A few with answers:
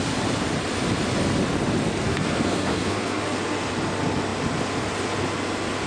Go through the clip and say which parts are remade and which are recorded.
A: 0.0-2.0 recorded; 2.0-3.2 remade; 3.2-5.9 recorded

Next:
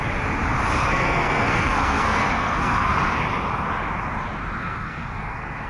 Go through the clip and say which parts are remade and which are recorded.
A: 0.0-0.8 recorded; 0.8-2.9 remade; 2.9-4.6 recorded; 4.6-5.7 remade